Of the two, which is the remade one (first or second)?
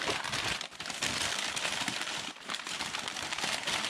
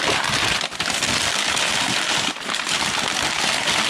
first